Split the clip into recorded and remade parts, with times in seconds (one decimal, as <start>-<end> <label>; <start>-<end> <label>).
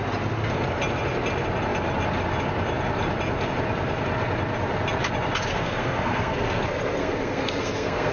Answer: 0.0-5.5 recorded; 5.5-6.6 remade; 6.6-7.0 recorded; 7.0-8.1 remade